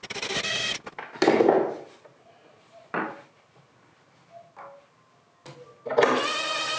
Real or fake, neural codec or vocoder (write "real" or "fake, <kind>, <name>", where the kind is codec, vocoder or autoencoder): real